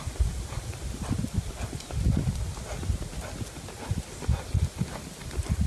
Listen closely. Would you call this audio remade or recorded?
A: recorded